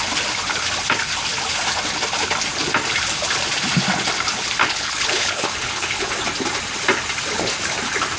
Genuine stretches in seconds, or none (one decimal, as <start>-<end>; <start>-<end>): 0.0-4.6; 6.1-8.2